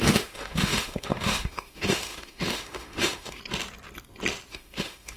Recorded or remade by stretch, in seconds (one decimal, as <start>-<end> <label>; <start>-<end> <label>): 0.0-3.4 remade; 3.4-4.5 recorded; 4.5-5.2 remade